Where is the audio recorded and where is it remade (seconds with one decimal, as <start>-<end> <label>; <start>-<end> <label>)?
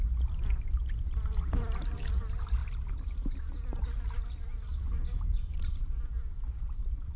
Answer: 0.0-7.2 recorded